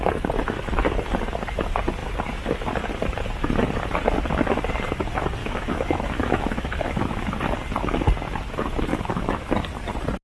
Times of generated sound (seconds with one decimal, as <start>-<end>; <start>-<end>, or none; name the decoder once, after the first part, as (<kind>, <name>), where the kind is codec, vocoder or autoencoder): 5.4-7.3 (autoencoder, DAC-VAE); 8.9-9.5